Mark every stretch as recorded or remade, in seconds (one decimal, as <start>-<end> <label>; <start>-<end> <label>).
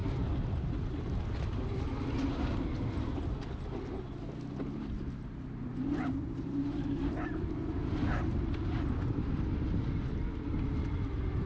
0.0-11.5 recorded